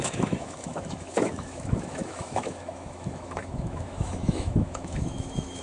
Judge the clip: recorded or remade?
remade